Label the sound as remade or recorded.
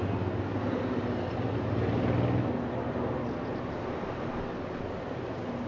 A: recorded